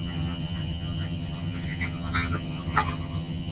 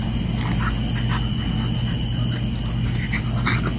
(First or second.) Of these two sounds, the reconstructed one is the first